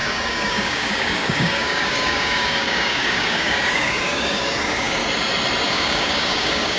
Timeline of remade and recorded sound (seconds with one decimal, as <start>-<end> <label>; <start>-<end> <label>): 0.0-5.0 remade; 5.0-5.7 recorded; 5.7-6.8 remade